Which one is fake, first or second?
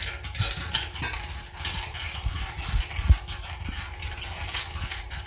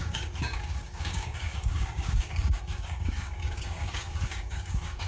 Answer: second